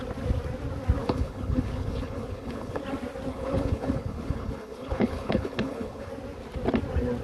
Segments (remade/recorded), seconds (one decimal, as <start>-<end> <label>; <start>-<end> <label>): 0.0-1.0 recorded; 1.0-2.8 remade; 2.8-3.3 recorded; 3.3-6.1 remade; 6.1-7.2 recorded